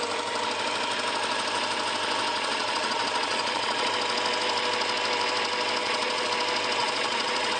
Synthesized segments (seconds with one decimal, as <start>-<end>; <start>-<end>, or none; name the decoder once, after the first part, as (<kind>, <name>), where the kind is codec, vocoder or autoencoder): 2.3-3.9 (vocoder, Vocos); 5.8-6.3; 6.8-7.6